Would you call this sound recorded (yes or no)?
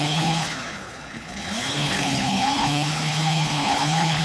no